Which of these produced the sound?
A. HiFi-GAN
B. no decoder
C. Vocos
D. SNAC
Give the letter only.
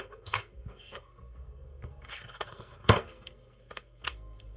D